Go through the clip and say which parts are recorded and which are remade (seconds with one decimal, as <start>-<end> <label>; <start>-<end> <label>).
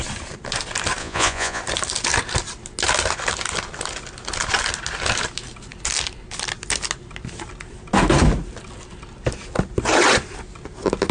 0.0-1.0 recorded; 1.0-1.6 remade; 1.6-11.1 recorded